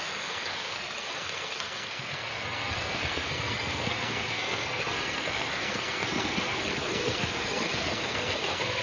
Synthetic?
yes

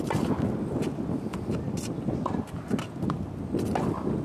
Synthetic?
no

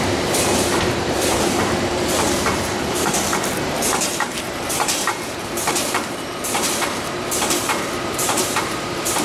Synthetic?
yes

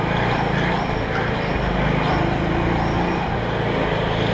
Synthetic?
no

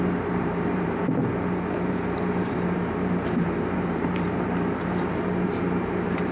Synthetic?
yes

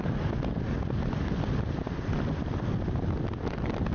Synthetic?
no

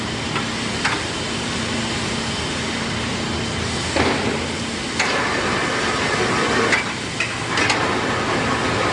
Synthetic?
no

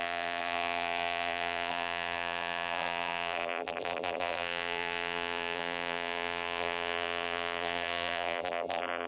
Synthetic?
yes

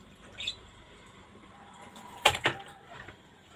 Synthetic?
yes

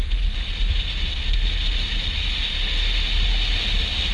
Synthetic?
no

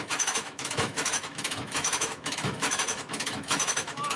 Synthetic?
yes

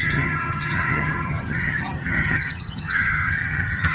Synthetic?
yes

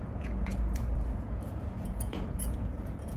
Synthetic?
yes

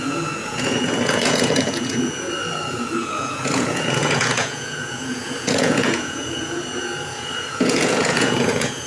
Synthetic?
yes